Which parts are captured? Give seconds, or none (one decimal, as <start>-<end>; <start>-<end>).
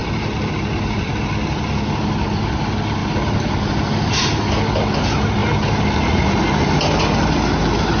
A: 1.1-3.0; 4.1-8.0